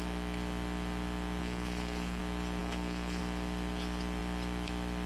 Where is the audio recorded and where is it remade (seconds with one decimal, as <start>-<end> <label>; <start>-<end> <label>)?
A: 0.0-1.4 recorded; 1.4-2.2 remade; 2.2-2.6 recorded; 2.6-3.2 remade; 3.2-5.1 recorded